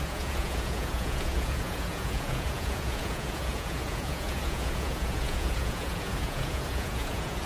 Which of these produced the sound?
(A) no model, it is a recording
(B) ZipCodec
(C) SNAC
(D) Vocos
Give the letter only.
D